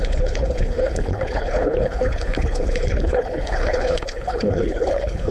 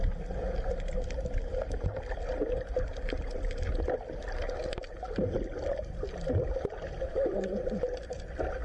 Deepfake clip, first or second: first